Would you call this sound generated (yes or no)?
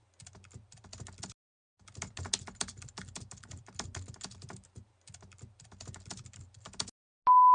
no